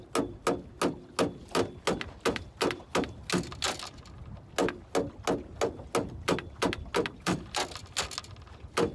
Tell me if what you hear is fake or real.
real